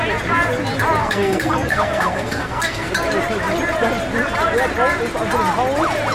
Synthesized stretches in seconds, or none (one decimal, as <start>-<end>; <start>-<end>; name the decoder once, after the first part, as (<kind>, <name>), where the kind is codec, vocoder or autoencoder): 1.0-2.9 (codec, SNAC)